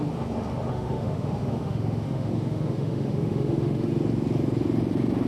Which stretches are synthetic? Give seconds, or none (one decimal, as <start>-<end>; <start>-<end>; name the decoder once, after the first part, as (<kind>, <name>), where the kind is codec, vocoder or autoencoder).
0.7-3.9 (autoencoder, DAC-VAE)